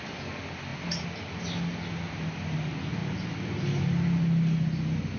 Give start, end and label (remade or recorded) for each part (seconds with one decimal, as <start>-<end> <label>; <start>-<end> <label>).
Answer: 0.0-5.2 recorded